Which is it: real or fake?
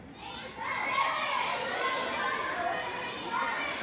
real